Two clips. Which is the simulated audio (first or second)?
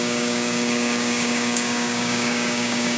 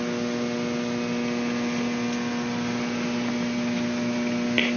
first